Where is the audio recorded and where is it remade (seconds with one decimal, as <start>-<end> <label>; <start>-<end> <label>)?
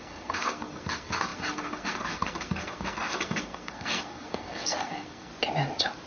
0.0-5.3 remade; 5.3-6.1 recorded